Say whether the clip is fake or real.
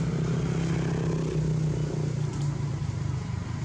real